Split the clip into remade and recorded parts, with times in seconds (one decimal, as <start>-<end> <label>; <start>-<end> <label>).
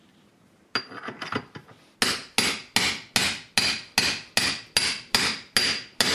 0.0-6.1 recorded